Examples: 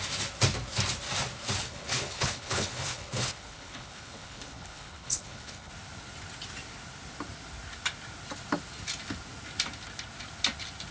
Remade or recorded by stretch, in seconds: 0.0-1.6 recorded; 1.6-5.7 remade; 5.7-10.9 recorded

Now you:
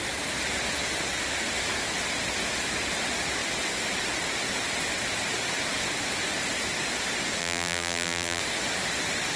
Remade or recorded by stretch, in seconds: 0.0-7.4 recorded; 7.4-8.4 remade; 8.4-9.4 recorded